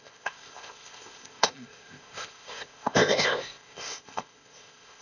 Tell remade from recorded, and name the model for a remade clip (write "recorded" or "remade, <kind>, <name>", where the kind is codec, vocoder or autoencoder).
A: remade, codec, ZipCodec